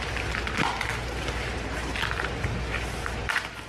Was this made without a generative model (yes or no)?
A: yes